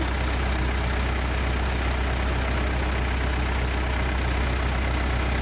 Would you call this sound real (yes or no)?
yes